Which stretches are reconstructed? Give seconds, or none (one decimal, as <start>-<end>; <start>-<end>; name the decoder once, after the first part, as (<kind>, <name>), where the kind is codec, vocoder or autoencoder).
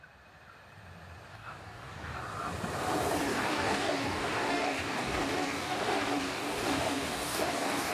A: 1.3-2.2 (codec, DAC); 3.3-7.9